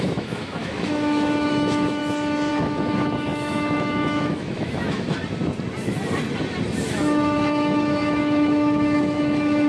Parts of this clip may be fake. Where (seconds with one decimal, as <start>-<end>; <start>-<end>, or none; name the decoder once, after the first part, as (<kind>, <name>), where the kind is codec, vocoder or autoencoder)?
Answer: 0.0-2.0 (autoencoder, DAC-VAE); 2.5-5.2; 6.9-9.7